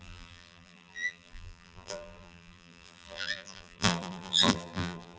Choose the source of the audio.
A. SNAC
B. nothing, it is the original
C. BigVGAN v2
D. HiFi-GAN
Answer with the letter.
C